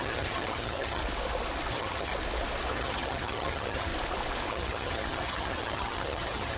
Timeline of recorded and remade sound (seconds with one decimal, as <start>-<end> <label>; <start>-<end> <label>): 0.0-1.0 remade; 1.0-1.7 recorded; 1.7-2.1 remade; 2.1-2.7 recorded; 2.7-3.9 remade; 3.9-4.5 recorded; 4.5-6.6 remade